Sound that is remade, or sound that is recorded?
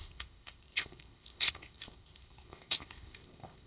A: remade